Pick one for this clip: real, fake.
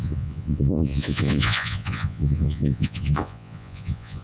fake